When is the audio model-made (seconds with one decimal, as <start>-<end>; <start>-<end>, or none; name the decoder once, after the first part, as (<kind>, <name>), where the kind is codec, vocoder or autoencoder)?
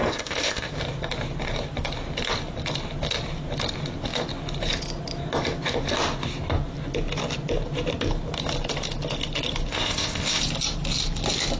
0.0-0.7 (codec, ZipCodec); 9.7-10.4